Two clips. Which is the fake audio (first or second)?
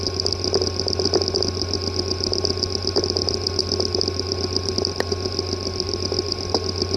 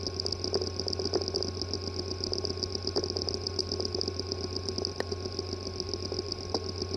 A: first